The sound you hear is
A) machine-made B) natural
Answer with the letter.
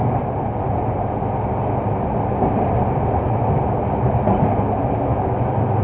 B